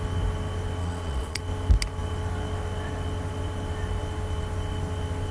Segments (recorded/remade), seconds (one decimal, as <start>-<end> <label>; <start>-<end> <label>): 0.0-0.8 recorded; 0.8-1.4 remade; 1.4-5.3 recorded